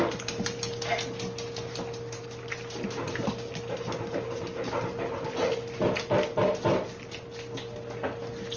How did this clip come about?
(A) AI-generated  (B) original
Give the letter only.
B